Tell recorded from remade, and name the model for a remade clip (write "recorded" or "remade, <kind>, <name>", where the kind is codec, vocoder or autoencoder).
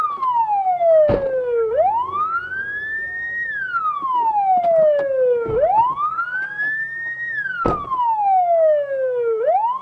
recorded